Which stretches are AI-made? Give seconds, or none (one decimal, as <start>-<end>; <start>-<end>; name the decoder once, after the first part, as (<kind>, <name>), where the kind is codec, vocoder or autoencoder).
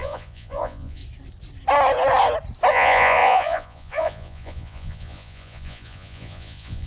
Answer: 0.0-1.0 (vocoder, Vocos); 2.7-6.9